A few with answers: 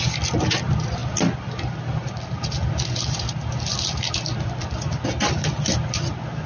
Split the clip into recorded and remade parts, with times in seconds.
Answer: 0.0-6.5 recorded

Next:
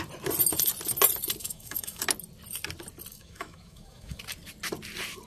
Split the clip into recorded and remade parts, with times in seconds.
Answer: 0.0-1.4 recorded; 1.4-2.0 remade; 2.0-3.1 recorded; 3.1-4.2 remade; 4.2-5.3 recorded

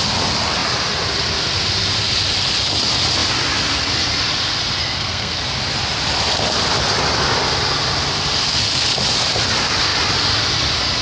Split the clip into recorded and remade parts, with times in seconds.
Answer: 0.0-4.8 recorded; 4.8-5.4 remade; 5.4-11.0 recorded

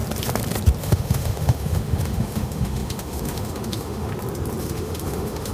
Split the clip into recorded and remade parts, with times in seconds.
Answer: 0.0-0.8 recorded; 0.8-4.1 remade; 4.1-4.6 recorded; 4.6-5.5 remade